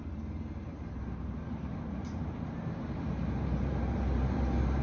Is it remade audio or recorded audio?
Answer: remade